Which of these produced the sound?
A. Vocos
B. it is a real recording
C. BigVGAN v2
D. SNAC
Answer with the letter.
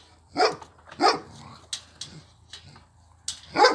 B